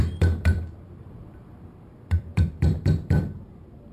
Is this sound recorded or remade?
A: remade